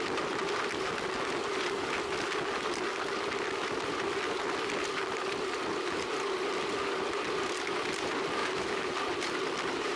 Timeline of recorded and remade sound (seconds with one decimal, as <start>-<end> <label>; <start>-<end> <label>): 0.0-8.4 recorded; 8.4-8.9 remade; 8.9-10.0 recorded